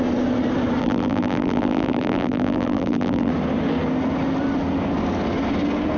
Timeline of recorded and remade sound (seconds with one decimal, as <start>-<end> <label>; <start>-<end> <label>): 0.0-0.8 recorded; 0.8-3.3 remade; 3.3-6.0 recorded